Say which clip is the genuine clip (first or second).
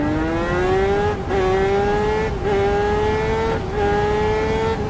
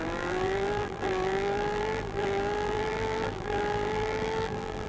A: first